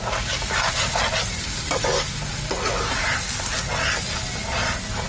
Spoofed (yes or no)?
no